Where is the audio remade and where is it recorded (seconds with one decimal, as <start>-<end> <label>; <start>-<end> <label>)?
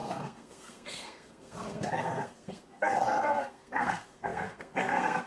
0.0-5.3 remade